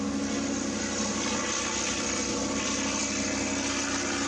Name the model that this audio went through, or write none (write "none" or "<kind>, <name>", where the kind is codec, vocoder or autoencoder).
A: none